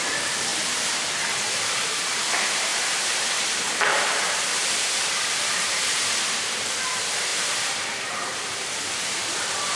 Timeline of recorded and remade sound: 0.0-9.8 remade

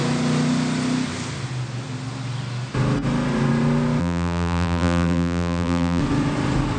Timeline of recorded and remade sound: 0.0-4.0 recorded; 4.0-6.0 remade; 6.0-6.8 recorded

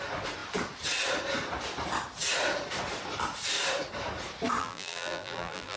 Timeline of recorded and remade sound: 0.0-4.6 recorded; 4.6-5.8 remade

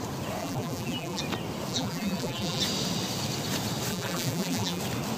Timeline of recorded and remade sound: 0.0-0.4 recorded; 0.4-1.2 remade; 1.2-1.7 recorded; 1.7-2.6 remade; 2.6-3.9 recorded; 3.9-4.8 remade; 4.8-5.2 recorded

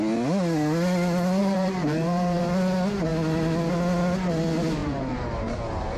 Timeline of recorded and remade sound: 0.0-1.4 recorded; 1.4-2.4 remade; 2.4-4.8 recorded; 4.8-5.6 remade; 5.6-6.0 recorded

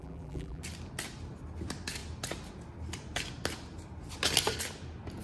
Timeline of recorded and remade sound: 0.0-0.6 remade; 0.6-5.2 recorded

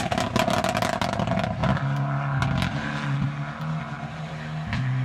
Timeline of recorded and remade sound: 0.0-5.0 recorded